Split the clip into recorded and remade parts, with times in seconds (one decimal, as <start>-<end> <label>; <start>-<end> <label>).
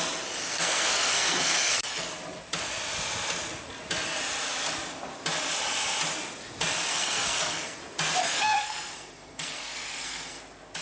0.0-0.4 recorded; 0.4-2.1 remade; 2.1-6.9 recorded; 6.9-7.8 remade; 7.8-8.2 recorded; 8.2-10.4 remade; 10.4-10.8 recorded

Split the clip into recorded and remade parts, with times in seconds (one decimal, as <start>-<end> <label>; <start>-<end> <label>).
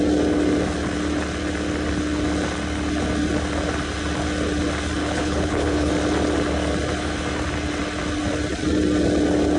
0.0-5.0 recorded; 5.0-5.9 remade; 5.9-9.6 recorded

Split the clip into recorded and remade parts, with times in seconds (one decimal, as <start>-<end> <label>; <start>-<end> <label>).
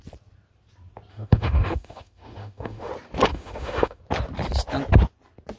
0.0-1.1 recorded; 1.1-2.9 remade; 2.9-3.3 recorded; 3.3-4.0 remade; 4.0-5.6 recorded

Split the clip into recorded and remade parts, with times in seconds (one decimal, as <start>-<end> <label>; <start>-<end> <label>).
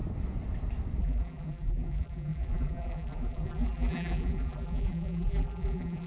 0.0-1.0 recorded; 1.0-6.1 remade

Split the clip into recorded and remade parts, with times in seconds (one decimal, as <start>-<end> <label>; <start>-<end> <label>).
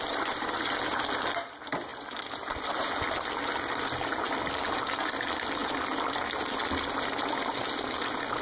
0.0-8.4 recorded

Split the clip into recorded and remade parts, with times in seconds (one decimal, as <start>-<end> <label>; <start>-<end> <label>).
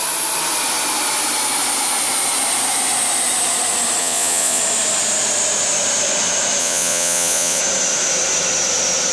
0.0-4.0 recorded; 4.0-4.6 remade; 4.6-6.6 recorded; 6.6-7.6 remade; 7.6-9.1 recorded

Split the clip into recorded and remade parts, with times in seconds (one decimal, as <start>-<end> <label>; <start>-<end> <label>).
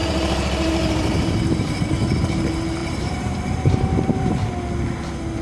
0.0-1.9 remade; 1.9-2.8 recorded; 2.8-4.5 remade; 4.5-5.4 recorded